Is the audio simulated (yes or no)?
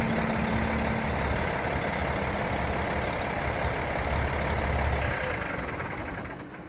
no